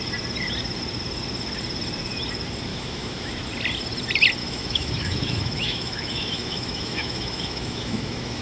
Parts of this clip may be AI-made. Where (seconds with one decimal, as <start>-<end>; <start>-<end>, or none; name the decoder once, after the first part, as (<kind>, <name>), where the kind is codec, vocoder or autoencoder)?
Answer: 2.7-3.3 (autoencoder, DAC-VAE); 4.4-8.4